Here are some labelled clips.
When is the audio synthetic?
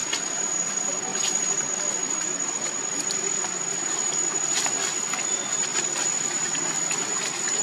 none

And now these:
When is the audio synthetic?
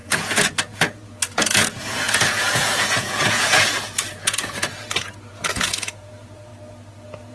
0.0-6.5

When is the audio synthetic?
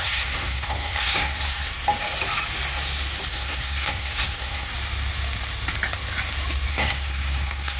0.0-1.7; 3.3-4.7; 6.7-7.8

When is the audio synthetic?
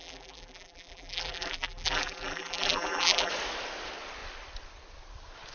0.0-3.3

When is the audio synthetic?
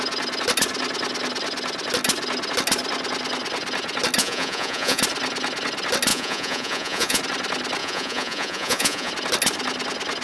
4.2-5.0; 6.1-7.2; 7.8-9.1